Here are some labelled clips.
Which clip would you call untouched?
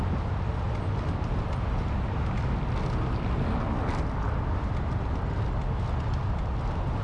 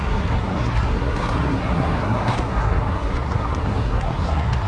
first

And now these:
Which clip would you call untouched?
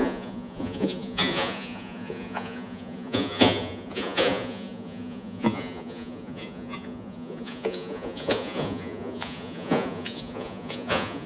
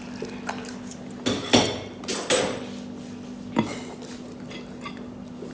second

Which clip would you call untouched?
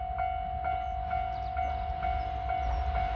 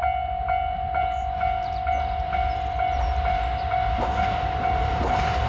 first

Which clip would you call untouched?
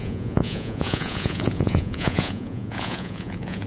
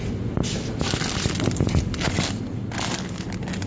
second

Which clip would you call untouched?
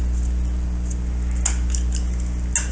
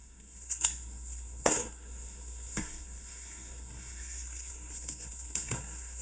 first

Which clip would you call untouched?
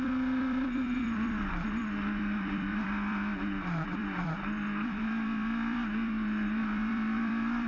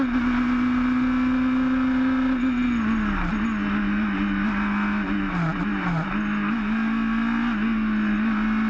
second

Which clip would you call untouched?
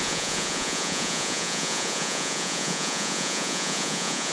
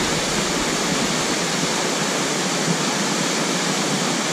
second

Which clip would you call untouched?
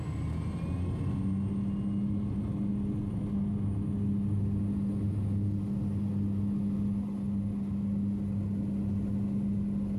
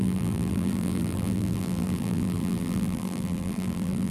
first